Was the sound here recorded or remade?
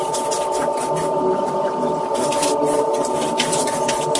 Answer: recorded